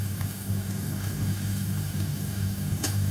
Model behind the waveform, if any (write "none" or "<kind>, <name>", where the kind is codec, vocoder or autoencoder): codec, DAC